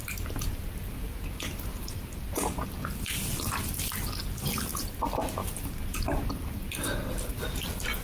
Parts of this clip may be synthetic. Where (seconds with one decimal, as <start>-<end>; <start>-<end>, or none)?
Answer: none